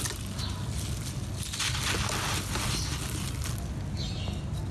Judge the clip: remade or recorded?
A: recorded